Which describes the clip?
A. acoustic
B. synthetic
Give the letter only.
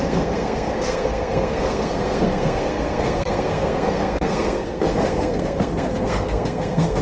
B